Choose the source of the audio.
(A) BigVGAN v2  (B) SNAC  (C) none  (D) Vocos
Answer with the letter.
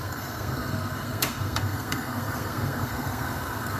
B